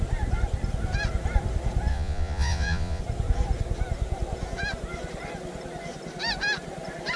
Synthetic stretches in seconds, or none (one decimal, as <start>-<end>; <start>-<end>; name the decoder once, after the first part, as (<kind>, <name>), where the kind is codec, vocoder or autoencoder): 1.9-3.0 (vocoder, Vocos)